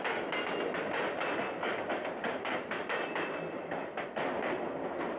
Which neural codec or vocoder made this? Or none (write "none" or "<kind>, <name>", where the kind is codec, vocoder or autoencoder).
none